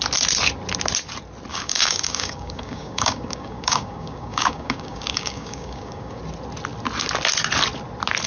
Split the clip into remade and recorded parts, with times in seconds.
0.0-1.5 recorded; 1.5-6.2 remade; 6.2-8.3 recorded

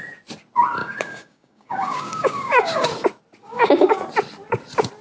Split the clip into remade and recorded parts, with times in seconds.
0.0-0.8 recorded; 0.8-2.9 remade; 2.9-3.4 recorded; 3.4-4.0 remade; 4.0-5.0 recorded

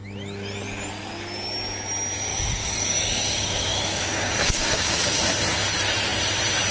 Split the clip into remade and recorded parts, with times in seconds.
0.0-2.3 recorded; 2.3-5.2 remade; 5.2-6.7 recorded

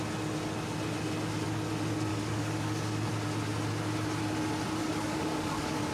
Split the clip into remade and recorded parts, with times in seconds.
0.0-2.1 recorded; 2.1-3.1 remade; 3.1-4.8 recorded; 4.8-5.9 remade

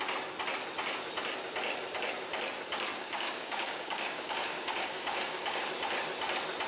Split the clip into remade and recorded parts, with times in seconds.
0.0-2.9 recorded; 2.9-5.7 remade; 5.7-6.7 recorded

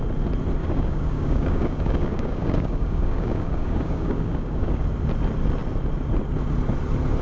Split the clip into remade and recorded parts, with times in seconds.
0.0-0.6 recorded; 0.6-4.8 remade; 4.8-7.2 recorded

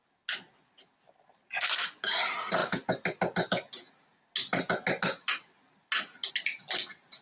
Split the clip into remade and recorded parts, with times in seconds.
0.0-7.2 recorded

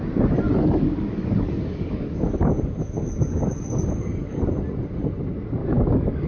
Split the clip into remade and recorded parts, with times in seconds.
0.0-0.6 recorded; 0.6-4.4 remade; 4.4-5.6 recorded; 5.6-6.3 remade